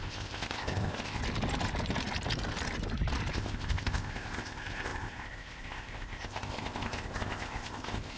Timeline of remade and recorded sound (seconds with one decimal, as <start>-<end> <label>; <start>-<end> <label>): 0.0-1.2 remade; 1.2-3.3 recorded; 3.3-8.2 remade